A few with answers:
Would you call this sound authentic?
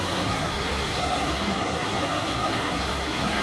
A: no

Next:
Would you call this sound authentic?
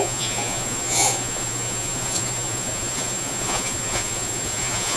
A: no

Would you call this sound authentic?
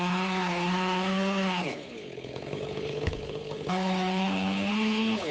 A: no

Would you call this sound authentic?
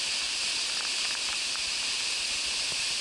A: yes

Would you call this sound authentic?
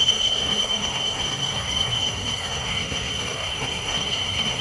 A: no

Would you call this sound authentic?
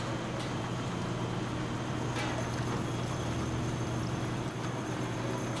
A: yes